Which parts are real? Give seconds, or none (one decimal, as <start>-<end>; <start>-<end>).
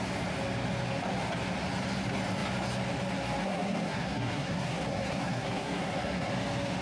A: 0.0-3.4; 6.3-6.8